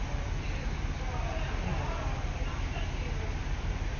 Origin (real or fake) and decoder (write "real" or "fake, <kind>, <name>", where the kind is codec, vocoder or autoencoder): real